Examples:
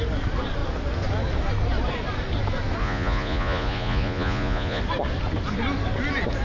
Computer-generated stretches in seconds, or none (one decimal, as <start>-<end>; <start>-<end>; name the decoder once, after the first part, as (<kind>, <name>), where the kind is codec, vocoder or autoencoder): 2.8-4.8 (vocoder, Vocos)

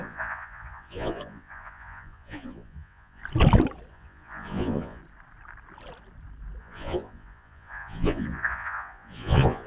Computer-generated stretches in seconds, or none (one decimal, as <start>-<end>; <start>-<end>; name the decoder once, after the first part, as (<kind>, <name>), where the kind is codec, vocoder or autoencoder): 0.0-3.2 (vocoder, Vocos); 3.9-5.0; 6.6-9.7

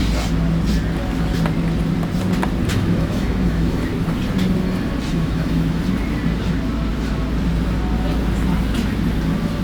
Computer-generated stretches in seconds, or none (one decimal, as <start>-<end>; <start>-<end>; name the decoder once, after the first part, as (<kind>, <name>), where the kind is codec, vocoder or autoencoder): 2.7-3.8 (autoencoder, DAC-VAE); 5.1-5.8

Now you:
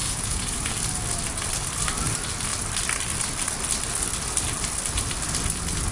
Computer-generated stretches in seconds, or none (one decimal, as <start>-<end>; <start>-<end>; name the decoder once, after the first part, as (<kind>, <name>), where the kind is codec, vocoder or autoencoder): 0.0-0.7 (vocoder, Vocos)